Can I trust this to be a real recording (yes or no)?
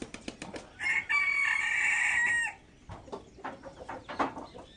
yes